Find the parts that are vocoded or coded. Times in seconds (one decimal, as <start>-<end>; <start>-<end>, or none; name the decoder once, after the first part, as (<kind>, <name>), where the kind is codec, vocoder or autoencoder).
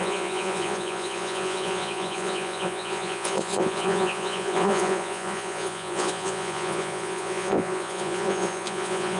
0.0-9.2 (vocoder, Vocos)